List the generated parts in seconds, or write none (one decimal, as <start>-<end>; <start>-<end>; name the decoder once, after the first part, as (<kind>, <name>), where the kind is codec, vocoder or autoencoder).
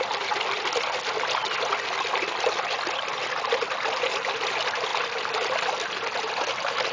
none